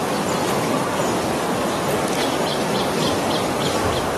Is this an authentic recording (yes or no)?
yes